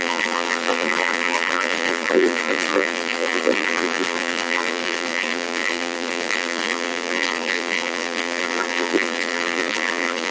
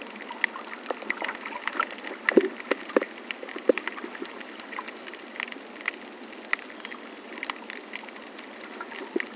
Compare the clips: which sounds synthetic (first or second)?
first